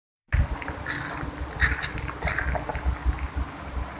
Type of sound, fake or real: fake